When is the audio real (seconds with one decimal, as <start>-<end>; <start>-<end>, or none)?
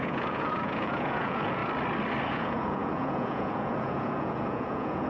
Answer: 1.6-2.3